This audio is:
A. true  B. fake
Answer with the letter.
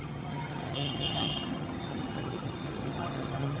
B